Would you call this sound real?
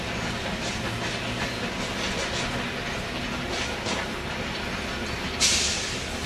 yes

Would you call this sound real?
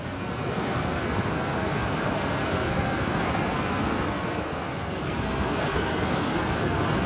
no